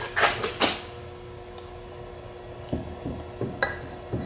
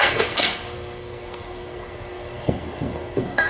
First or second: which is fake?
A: second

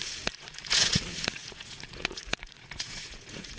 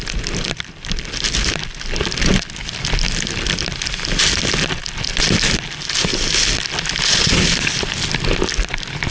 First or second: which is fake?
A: first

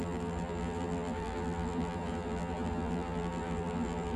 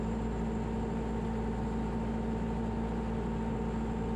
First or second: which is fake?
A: first